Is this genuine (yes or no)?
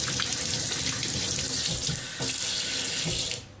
yes